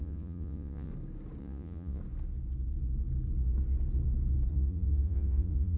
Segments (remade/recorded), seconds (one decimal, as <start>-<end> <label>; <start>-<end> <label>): 0.0-0.9 remade; 0.9-1.4 recorded; 1.4-2.0 remade; 2.0-4.5 recorded; 4.5-5.8 remade